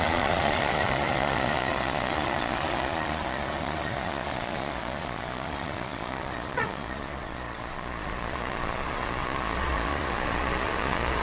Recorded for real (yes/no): no